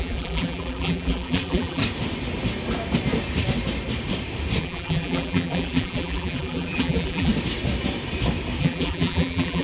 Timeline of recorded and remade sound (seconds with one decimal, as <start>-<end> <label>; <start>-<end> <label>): 0.0-1.8 remade; 1.8-4.6 recorded; 4.6-7.3 remade; 7.3-8.6 recorded; 8.6-9.6 remade